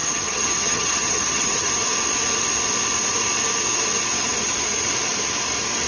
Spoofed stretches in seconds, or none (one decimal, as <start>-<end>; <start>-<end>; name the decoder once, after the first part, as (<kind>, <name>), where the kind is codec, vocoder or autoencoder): 0.0-1.7 (vocoder, HiFi-GAN)

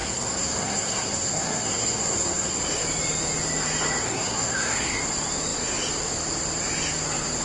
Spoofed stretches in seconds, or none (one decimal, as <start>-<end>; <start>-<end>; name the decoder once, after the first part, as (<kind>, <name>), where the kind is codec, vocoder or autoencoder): 0.0-2.6 (codec, SNAC); 4.0-5.0

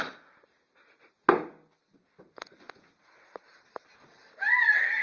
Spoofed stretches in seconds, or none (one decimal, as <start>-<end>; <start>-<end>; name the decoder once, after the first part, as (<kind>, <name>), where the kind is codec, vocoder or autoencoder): none

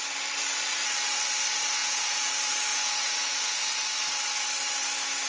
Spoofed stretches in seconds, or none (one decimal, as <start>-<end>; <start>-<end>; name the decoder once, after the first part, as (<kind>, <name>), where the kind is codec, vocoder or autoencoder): 1.8-2.3 (vocoder, Vocos); 2.7-3.6

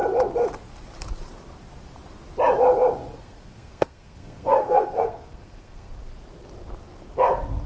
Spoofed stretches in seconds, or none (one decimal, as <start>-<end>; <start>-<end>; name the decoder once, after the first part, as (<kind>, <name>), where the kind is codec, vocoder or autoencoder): 3.1-5.9 (codec, SNAC)

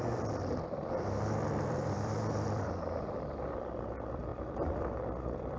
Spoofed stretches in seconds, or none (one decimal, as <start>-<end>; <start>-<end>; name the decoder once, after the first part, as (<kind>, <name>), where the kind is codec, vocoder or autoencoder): 0.0-5.6 (vocoder, BigVGAN v2)